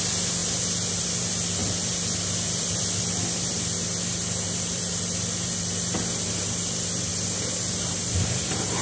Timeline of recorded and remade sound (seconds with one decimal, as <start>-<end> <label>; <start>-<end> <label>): 0.0-0.4 remade; 0.4-1.0 recorded; 1.0-7.1 remade; 7.1-7.9 recorded; 7.9-8.8 remade